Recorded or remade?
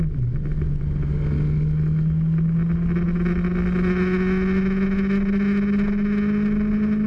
recorded